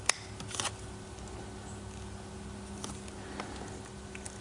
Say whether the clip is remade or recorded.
recorded